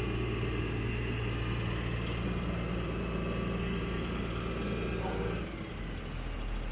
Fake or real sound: real